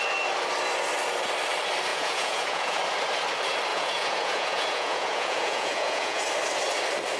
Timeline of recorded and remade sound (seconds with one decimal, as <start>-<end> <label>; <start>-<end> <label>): 0.0-1.9 recorded; 1.9-2.8 remade; 2.8-3.7 recorded; 3.7-6.2 remade; 6.2-7.2 recorded